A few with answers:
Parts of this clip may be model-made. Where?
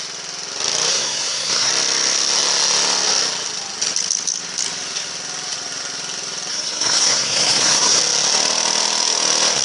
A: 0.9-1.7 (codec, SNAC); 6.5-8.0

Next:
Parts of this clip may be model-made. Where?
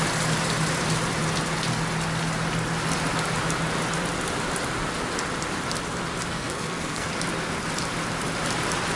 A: 6.3-7.1 (codec, SNAC)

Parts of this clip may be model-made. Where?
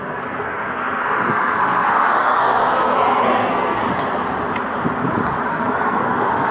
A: 0.0-3.8 (codec, SNAC); 5.5-6.5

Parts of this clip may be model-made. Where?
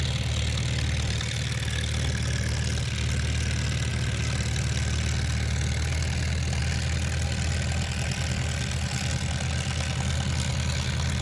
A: none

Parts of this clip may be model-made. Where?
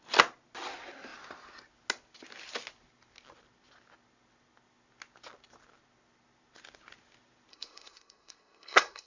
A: 7.5-9.1 (codec, SNAC)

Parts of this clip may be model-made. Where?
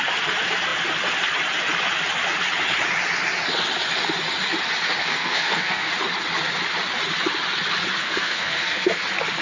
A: 5.0-5.9 (codec, SNAC); 8.0-9.0